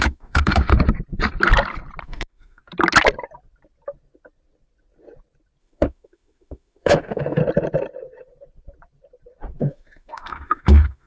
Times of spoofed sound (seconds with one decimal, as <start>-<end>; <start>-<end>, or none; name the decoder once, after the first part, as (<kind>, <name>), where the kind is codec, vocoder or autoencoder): 0.0-0.7 (autoencoder, DAC-VAE); 2.0-2.6; 5.6-7.4; 9.6-11.1